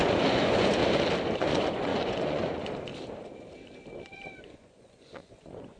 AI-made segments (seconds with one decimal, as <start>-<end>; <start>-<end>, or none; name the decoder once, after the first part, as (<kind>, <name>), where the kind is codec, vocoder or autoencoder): 0.0-0.8 (vocoder, Vocos); 1.4-2.9; 4.0-5.8